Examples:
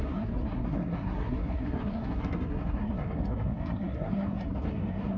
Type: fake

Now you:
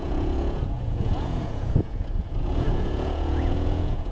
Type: fake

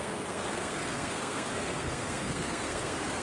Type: fake